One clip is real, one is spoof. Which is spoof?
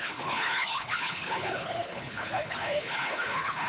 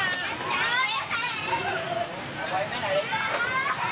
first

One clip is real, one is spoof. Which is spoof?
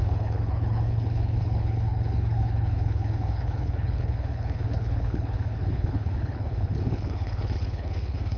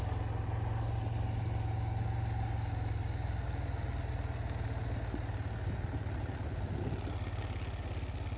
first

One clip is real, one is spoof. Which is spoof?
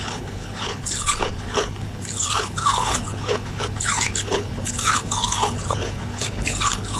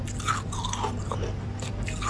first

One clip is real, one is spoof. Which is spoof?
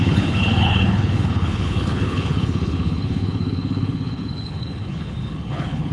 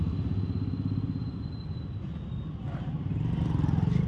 first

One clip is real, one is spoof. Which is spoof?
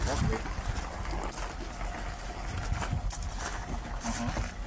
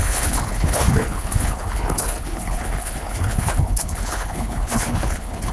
second